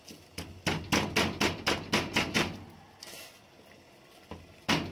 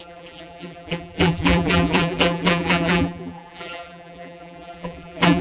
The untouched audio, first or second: first